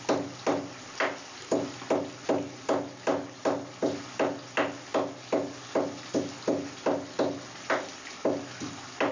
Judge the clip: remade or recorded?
recorded